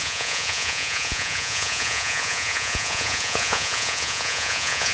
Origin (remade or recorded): remade